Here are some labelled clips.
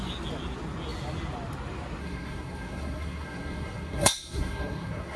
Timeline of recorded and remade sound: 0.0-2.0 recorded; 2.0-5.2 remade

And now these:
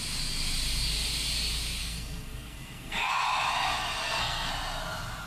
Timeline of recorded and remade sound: 0.0-1.8 recorded; 1.8-3.1 remade; 3.1-4.0 recorded; 4.0-4.5 remade; 4.5-5.3 recorded

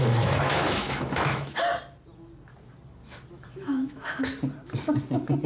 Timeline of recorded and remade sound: 0.0-1.7 remade; 1.7-3.3 recorded; 3.3-4.3 remade; 4.3-5.5 recorded

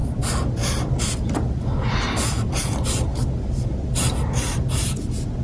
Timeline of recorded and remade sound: 0.0-5.4 recorded

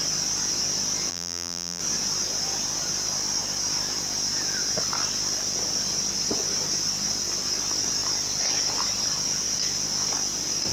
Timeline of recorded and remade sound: 0.0-1.1 recorded; 1.1-1.8 remade; 1.8-10.7 recorded

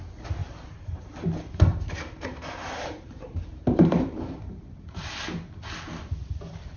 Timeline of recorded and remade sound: 0.0-0.4 recorded; 0.4-1.2 remade; 1.2-1.7 recorded; 1.7-5.1 remade; 5.1-6.8 recorded

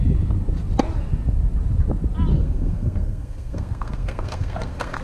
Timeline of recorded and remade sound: 0.0-2.3 recorded; 2.3-5.0 remade

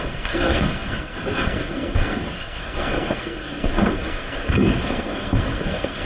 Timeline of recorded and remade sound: 0.0-6.1 remade